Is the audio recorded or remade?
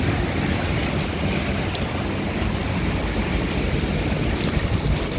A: recorded